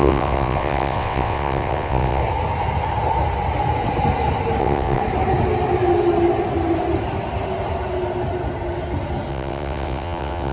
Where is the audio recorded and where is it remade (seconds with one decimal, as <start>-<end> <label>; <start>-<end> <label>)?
0.0-2.2 remade; 2.2-4.6 recorded; 4.6-5.0 remade; 5.0-9.3 recorded; 9.3-10.5 remade